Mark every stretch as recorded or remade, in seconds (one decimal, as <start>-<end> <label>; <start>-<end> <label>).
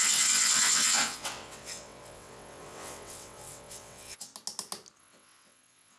0.0-4.3 remade; 4.3-5.0 recorded; 5.0-6.0 remade